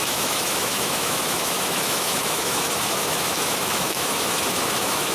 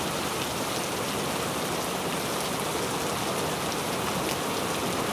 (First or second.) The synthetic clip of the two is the first